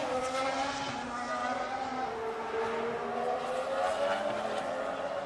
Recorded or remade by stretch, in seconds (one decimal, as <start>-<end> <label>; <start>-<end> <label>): 0.0-5.3 recorded